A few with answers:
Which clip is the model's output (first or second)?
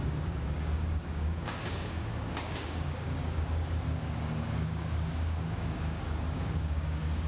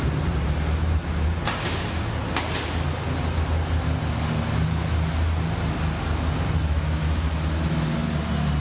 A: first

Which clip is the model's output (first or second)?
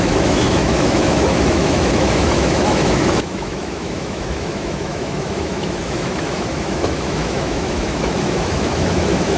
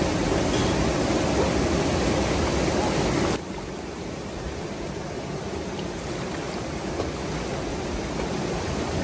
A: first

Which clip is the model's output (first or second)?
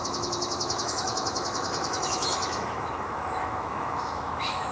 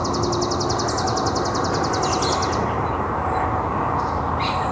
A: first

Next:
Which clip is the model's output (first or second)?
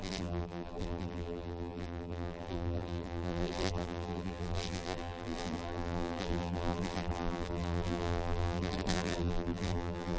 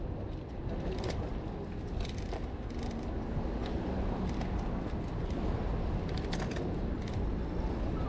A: first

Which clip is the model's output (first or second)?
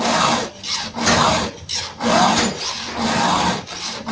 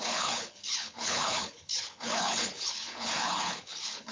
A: second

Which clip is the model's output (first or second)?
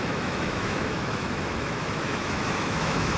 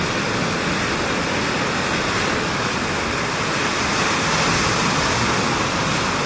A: first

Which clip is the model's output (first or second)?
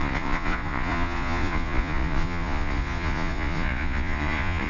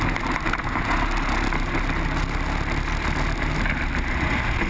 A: first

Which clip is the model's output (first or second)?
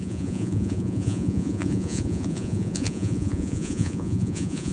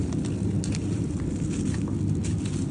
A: first